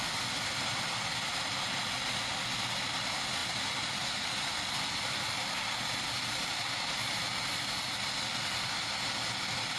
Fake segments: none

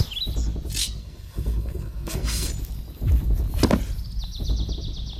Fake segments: 0.8-2.5 (codec, SNAC)

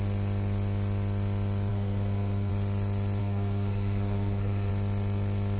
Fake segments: 1.7-2.5 (codec, SNAC); 3.2-4.7

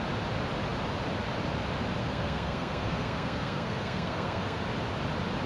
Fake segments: 2.0-4.6 (codec, SNAC)

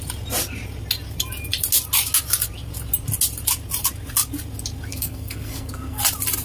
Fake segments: 4.9-6.0 (codec, SNAC)

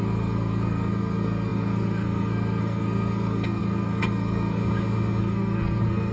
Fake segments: 0.0-4.6 (codec, SNAC); 5.2-6.1

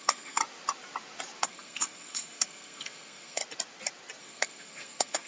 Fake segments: 0.0-0.4 (codec, SNAC); 1.4-3.4; 4.2-5.3